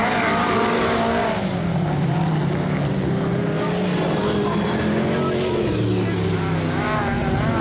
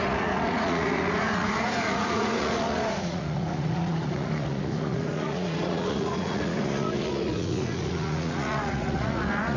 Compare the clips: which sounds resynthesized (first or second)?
second